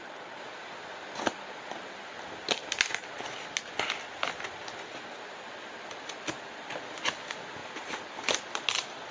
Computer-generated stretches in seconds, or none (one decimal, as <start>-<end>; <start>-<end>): none